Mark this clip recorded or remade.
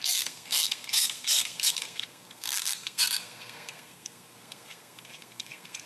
remade